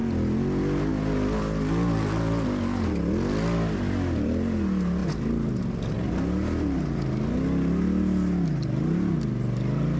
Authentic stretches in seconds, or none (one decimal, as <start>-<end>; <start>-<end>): 0.0-10.0